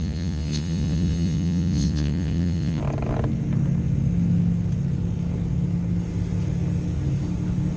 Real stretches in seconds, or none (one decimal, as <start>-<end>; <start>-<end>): 2.8-7.8